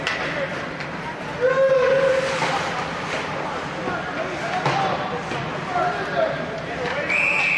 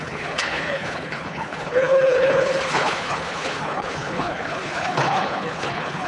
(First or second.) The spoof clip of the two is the second